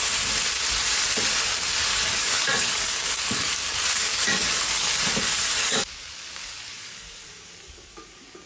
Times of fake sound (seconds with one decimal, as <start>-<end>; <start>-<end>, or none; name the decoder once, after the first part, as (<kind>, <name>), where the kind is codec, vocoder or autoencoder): 1.9-4.9 (codec, DAC); 5.6-8.5